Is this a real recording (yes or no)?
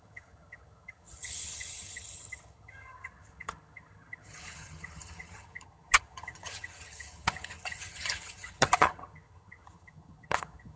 no